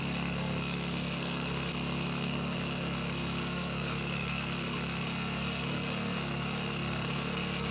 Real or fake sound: fake